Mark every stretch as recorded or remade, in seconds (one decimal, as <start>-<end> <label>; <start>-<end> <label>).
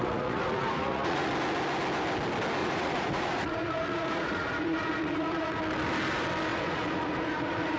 0.0-1.3 remade; 1.3-2.6 recorded; 2.6-5.6 remade; 5.6-6.5 recorded; 6.5-7.8 remade